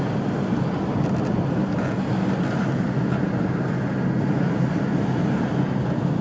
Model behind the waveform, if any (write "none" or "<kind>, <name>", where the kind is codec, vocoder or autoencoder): none